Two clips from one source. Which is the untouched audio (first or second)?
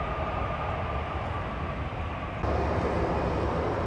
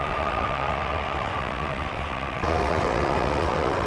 first